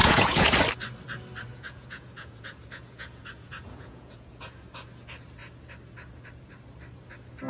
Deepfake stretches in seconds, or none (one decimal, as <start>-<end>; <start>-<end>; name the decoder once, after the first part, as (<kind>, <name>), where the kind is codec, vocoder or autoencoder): 0.0-0.5 (vocoder, Vocos); 1.5-4.6